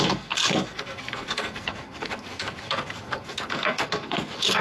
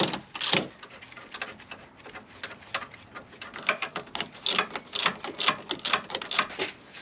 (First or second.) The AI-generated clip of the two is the first